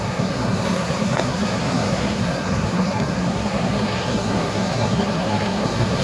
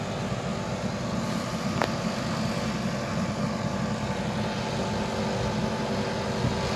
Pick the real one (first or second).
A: second